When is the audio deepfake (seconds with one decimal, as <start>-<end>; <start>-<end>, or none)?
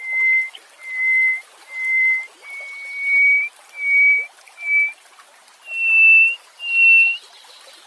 none